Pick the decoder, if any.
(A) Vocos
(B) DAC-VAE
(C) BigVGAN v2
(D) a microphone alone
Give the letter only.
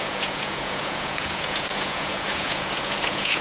A